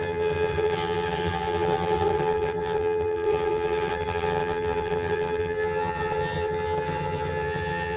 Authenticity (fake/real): fake